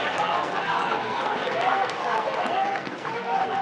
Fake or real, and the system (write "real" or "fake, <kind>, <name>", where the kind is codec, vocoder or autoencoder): fake, codec, SNAC